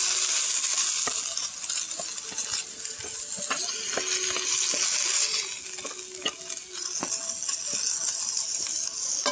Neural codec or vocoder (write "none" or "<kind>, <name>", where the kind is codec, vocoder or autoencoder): none